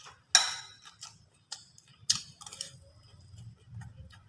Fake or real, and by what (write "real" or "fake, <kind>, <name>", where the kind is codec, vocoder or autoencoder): real